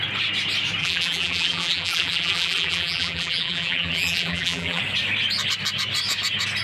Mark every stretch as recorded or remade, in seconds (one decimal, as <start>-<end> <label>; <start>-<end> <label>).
0.0-0.8 recorded; 0.8-4.8 remade; 4.8-6.6 recorded